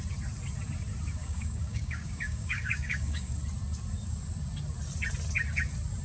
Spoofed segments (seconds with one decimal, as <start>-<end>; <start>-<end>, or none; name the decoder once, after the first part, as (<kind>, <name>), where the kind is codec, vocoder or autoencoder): 1.2-3.3 (codec, DAC)

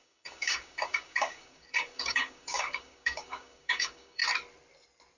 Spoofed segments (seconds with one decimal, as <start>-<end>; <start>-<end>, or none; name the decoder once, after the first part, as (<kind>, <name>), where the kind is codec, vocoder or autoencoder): 0.0-4.2 (codec, DAC)